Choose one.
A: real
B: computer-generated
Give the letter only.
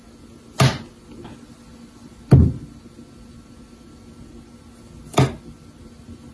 A